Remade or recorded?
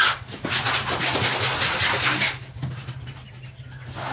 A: recorded